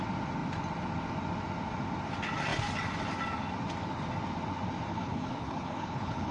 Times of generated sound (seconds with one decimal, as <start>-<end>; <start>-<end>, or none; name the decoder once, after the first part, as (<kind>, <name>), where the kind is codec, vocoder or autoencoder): 4.9-6.3 (codec, HILCodec)